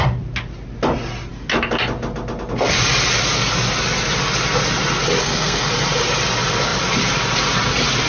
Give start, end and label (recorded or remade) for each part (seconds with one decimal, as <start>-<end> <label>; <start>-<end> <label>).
0.0-5.2 recorded; 5.2-5.7 remade; 5.7-8.1 recorded